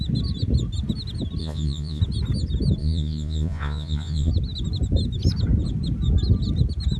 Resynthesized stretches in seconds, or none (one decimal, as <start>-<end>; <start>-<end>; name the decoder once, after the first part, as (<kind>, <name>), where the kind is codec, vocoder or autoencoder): 1.4-2.0 (vocoder, Vocos); 2.8-4.3